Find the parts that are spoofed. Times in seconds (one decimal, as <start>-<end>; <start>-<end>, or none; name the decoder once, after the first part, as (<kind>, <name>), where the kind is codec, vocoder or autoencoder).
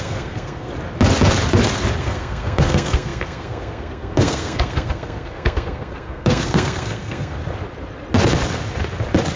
0.0-0.7 (codec, SNAC); 2.0-7.4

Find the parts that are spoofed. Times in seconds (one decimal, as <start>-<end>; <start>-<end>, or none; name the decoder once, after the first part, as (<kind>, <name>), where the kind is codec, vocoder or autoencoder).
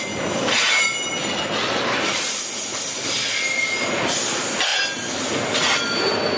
none